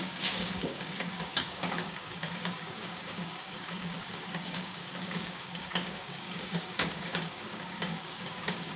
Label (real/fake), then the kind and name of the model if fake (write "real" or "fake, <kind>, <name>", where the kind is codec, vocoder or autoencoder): fake, codec, DAC